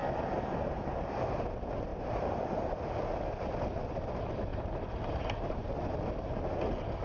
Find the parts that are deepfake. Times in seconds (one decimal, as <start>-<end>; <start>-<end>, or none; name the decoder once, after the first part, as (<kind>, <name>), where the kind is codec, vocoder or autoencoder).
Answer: 0.0-0.7 (vocoder, BigVGAN v2); 1.9-2.6; 4.5-5.7